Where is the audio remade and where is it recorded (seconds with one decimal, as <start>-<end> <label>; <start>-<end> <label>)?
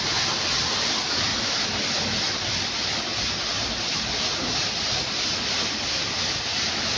0.0-1.3 remade; 1.3-2.2 recorded; 2.2-2.9 remade; 2.9-7.0 recorded